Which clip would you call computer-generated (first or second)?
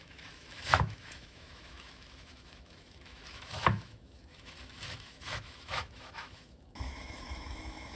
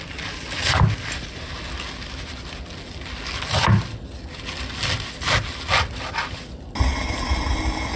first